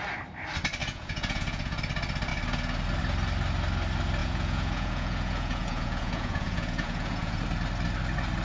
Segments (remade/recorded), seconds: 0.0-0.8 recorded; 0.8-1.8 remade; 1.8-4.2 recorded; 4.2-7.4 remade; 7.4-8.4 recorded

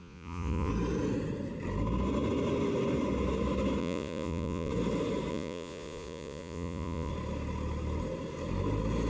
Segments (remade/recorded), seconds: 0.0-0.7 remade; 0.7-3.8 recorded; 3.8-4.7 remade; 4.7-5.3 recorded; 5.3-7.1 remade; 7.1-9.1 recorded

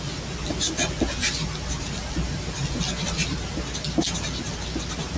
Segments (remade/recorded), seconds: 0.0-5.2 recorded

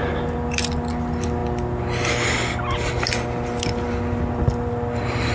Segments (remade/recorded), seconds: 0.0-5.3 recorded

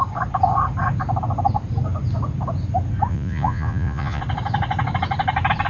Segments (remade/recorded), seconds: 0.0-3.1 recorded; 3.1-4.2 remade; 4.2-5.7 recorded

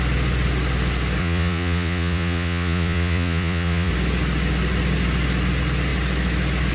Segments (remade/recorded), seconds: 0.0-1.2 recorded; 1.2-3.9 remade; 3.9-6.7 recorded